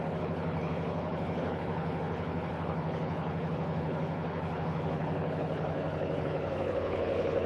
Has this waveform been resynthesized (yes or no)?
yes